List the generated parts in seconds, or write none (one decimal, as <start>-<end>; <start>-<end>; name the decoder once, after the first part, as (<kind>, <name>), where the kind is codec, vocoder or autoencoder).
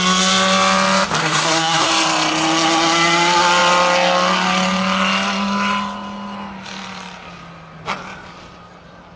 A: 1.2-1.9 (codec, SNAC)